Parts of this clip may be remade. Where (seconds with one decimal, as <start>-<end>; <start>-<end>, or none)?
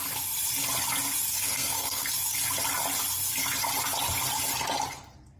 1.3-2.1